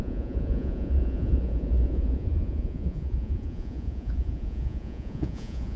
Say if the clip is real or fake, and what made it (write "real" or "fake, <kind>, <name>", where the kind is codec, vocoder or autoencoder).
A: fake, vocoder, Vocos